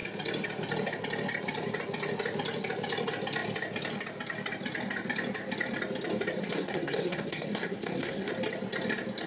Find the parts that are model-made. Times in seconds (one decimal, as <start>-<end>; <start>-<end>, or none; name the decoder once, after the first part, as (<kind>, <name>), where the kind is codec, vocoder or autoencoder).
6.4-8.3 (codec, SNAC)